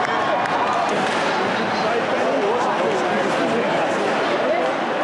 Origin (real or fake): real